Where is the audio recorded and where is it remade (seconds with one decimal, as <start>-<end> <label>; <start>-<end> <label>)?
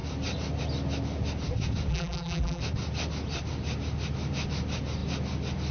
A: 0.0-1.9 recorded; 1.9-2.6 remade; 2.6-5.7 recorded